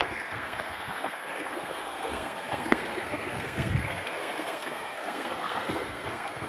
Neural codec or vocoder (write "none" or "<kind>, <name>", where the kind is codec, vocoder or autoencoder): codec, SNAC